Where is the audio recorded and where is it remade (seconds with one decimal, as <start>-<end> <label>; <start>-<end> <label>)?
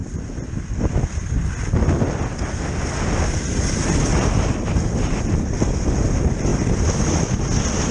0.0-1.6 remade; 1.6-4.1 recorded; 4.1-4.8 remade; 4.8-6.5 recorded; 6.5-7.3 remade; 7.3-7.9 recorded